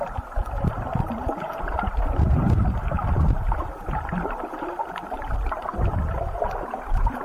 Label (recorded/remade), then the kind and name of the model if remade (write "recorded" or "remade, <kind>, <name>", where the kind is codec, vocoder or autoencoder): remade, vocoder, BigVGAN v2